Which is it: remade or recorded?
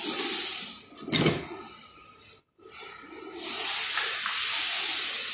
recorded